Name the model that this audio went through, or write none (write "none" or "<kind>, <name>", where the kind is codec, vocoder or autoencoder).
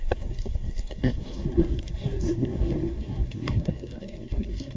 codec, SNAC